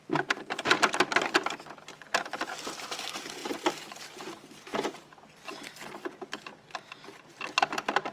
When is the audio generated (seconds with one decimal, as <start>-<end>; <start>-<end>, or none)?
none